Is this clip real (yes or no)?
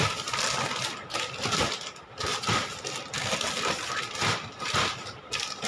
yes